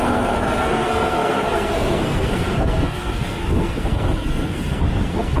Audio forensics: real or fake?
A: fake